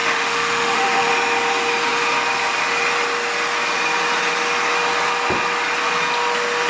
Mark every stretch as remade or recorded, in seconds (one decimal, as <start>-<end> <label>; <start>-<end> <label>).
0.0-1.1 remade; 1.1-6.7 recorded